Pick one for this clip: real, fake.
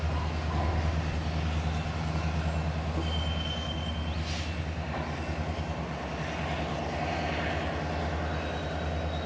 real